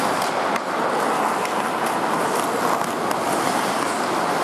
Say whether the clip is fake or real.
real